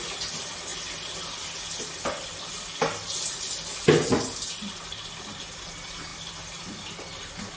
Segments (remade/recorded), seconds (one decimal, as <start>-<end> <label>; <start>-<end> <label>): 0.0-7.6 recorded